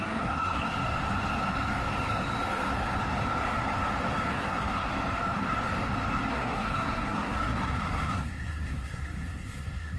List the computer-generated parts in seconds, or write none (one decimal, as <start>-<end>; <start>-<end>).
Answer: 0.0-0.7; 4.3-4.9; 6.3-10.0